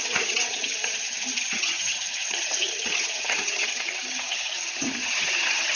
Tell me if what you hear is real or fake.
fake